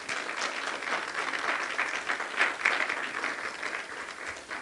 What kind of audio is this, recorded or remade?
recorded